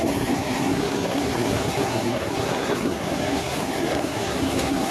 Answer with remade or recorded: remade